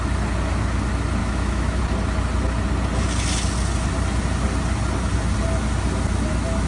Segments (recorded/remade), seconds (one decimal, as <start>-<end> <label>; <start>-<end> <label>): 0.0-1.2 recorded; 1.2-1.8 remade; 1.8-6.7 recorded